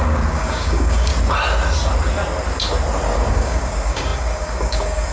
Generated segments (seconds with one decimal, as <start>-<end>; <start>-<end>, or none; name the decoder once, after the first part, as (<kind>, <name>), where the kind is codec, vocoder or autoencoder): 0.0-1.1 (codec, DAC); 3.3-5.1